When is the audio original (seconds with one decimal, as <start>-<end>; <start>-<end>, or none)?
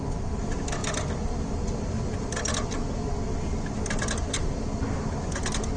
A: 0.0-5.8